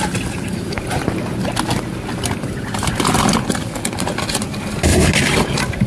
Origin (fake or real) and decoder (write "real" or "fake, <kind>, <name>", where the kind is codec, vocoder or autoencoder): real